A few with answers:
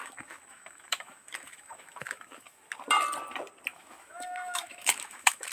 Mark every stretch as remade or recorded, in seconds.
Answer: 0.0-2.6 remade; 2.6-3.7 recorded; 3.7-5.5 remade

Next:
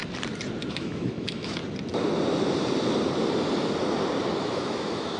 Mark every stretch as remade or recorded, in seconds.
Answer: 0.0-0.7 recorded; 0.7-1.6 remade; 1.6-4.4 recorded; 4.4-5.2 remade

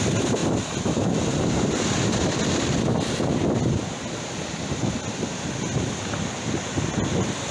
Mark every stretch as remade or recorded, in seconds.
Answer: 0.0-7.5 recorded

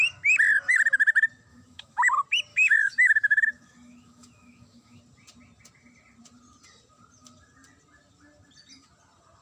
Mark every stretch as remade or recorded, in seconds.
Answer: 0.0-1.5 recorded; 1.5-2.1 remade; 2.1-2.5 recorded; 2.5-5.0 remade; 5.0-9.4 recorded

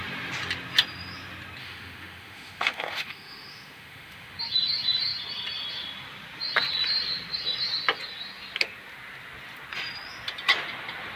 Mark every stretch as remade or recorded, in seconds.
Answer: 0.0-1.6 recorded; 1.6-4.4 remade; 4.4-11.2 recorded